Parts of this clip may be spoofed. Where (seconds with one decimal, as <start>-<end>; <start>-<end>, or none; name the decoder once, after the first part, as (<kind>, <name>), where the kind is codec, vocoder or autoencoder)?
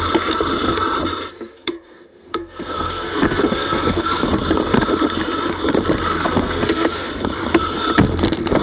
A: 1.3-4.3 (codec, SNAC); 6.1-7.1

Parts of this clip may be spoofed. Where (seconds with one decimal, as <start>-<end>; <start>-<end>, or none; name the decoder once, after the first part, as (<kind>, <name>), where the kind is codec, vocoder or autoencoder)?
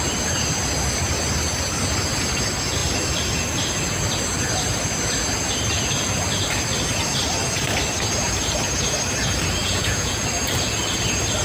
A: 9.6-10.2 (vocoder, Vocos)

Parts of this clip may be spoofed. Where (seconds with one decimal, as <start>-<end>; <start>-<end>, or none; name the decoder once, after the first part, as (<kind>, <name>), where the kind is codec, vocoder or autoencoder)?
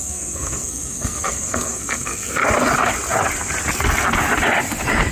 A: 0.0-2.4 (codec, SNAC)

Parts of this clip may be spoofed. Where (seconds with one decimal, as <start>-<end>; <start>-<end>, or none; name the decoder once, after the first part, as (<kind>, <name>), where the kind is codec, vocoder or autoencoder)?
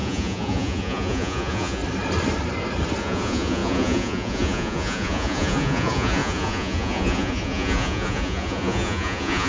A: 0.0-1.8 (vocoder, Vocos); 3.0-9.5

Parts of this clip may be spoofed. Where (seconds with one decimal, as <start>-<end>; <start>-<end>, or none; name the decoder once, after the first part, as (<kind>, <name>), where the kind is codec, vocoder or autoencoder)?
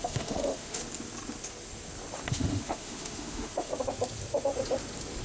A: 0.0-0.8 (autoencoder, DAC-VAE); 2.3-3.7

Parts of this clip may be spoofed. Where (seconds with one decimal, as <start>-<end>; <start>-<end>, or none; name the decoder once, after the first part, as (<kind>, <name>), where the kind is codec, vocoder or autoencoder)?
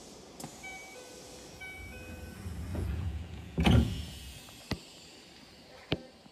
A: 2.7-4.4 (vocoder, Vocos)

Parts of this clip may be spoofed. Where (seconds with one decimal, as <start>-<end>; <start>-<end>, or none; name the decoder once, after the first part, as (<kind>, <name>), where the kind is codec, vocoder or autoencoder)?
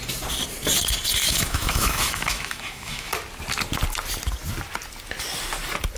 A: 1.2-3.1 (autoencoder, DAC-VAE)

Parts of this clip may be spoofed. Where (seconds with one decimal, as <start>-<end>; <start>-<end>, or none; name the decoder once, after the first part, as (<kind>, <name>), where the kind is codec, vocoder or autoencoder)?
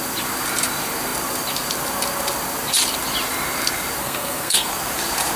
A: 4.0-4.7 (codec, SNAC)